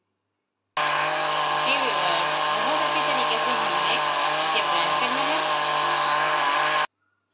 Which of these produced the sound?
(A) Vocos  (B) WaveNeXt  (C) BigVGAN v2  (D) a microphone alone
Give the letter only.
D